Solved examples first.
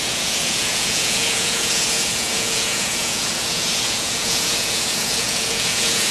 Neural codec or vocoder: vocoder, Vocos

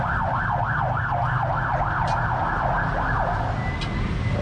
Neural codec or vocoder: none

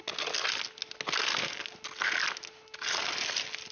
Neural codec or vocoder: none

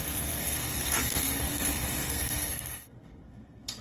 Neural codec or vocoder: codec, SNAC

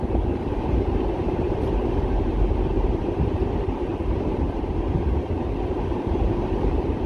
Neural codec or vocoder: vocoder, BigVGAN v2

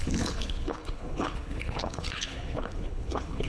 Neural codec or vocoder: codec, HILCodec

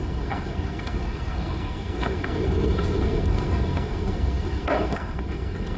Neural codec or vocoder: codec, SNAC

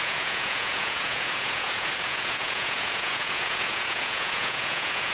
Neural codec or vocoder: vocoder, Vocos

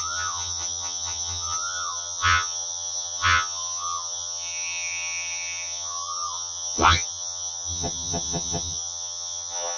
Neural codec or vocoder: vocoder, HiFi-GAN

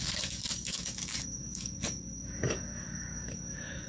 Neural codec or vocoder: codec, DAC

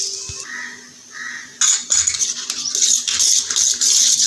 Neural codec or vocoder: none